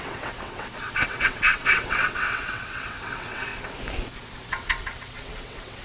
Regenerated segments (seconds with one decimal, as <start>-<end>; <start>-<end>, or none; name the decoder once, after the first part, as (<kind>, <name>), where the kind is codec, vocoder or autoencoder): 0.0-3.5 (vocoder, WaveNeXt); 4.5-5.8